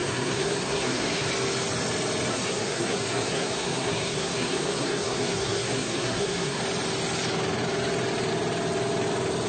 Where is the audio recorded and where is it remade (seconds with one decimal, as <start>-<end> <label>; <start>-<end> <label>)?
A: 0.0-1.3 remade; 1.3-2.3 recorded; 2.3-6.6 remade; 6.6-9.5 recorded